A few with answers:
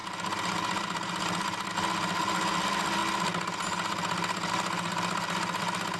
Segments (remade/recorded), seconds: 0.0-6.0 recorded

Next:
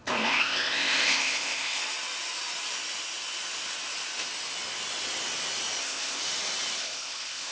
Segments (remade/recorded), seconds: 0.0-1.8 remade; 1.8-5.8 recorded; 5.8-6.2 remade; 6.2-6.8 recorded; 6.8-7.5 remade